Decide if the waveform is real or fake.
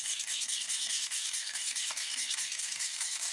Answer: fake